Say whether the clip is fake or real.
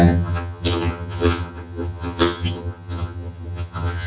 fake